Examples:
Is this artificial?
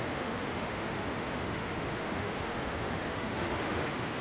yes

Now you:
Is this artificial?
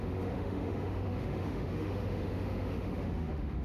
yes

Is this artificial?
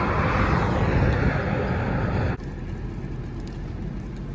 no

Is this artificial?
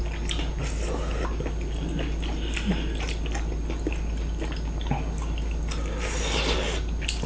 no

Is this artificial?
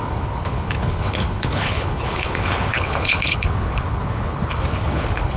yes